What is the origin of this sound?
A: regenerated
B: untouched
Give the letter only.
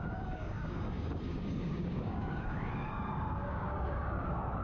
A